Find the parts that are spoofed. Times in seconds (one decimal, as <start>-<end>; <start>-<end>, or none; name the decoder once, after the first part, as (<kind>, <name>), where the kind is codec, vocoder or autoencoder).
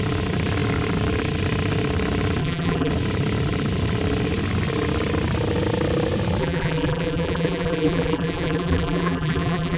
2.4-2.9 (vocoder, BigVGAN v2); 6.4-9.8